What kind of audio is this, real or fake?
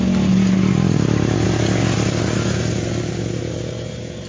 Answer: real